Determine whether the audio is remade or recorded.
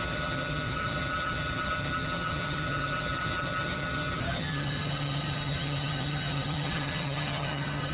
remade